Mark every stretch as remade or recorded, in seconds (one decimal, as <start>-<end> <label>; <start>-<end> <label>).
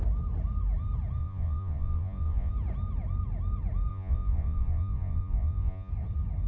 0.0-1.2 recorded; 1.2-2.5 remade; 2.5-3.9 recorded; 3.9-5.9 remade; 5.9-6.5 recorded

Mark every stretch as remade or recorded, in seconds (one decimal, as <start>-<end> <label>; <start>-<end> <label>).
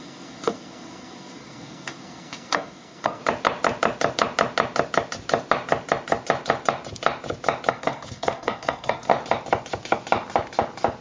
0.0-3.2 remade; 3.2-7.7 recorded; 7.7-9.1 remade; 9.1-11.0 recorded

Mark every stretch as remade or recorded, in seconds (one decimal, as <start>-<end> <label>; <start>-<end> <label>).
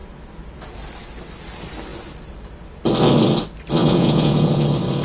0.0-3.8 recorded; 3.8-4.5 remade; 4.5-5.0 recorded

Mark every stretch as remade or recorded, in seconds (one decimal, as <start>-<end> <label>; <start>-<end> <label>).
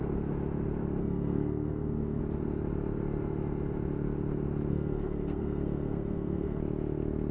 0.0-1.0 recorded; 1.0-2.2 remade; 2.2-4.7 recorded; 4.7-6.6 remade; 6.6-7.3 recorded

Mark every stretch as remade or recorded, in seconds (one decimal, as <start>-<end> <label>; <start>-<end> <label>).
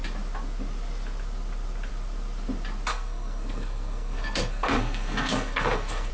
0.0-2.9 recorded; 2.9-6.1 remade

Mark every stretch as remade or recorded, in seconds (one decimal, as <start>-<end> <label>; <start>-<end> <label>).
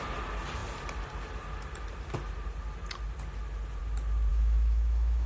0.0-4.3 recorded; 4.3-5.3 remade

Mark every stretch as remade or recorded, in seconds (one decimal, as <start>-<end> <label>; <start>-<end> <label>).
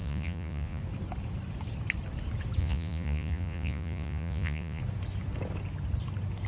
0.0-0.8 remade; 0.8-2.6 recorded; 2.6-4.8 remade; 4.8-6.5 recorded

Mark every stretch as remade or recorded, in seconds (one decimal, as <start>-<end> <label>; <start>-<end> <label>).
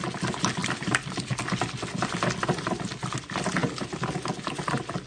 0.0-0.6 recorded; 0.6-1.4 remade; 1.4-5.1 recorded